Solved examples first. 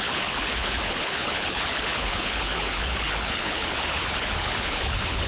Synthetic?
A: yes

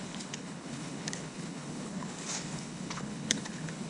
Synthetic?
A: yes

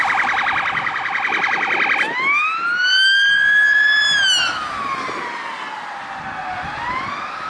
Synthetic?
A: no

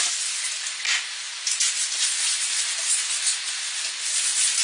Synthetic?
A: no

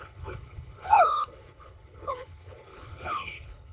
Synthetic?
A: yes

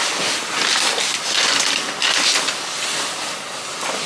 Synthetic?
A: no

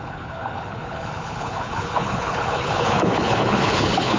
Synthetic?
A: yes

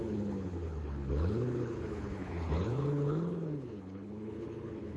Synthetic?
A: yes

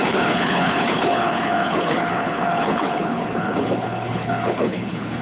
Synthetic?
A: yes